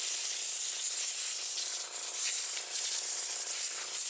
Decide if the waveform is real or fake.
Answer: real